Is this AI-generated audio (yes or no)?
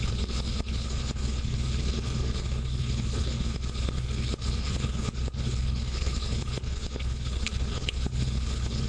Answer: yes